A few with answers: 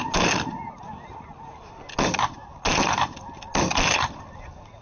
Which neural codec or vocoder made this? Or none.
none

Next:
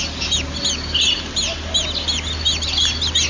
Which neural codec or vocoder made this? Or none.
none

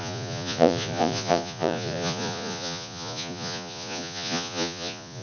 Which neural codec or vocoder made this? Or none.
vocoder, Vocos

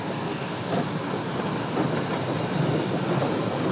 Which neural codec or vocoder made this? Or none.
none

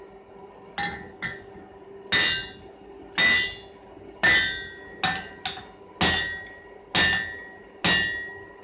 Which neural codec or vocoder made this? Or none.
none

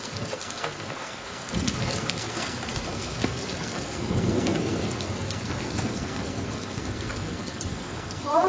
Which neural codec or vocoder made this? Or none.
codec, SNAC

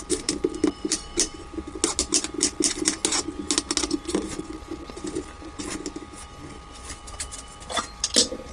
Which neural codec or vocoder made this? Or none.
none